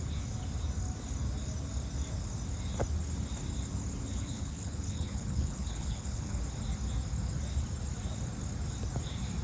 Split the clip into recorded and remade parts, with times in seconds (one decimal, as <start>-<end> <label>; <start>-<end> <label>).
0.0-4.1 recorded; 4.1-6.4 remade; 6.4-9.4 recorded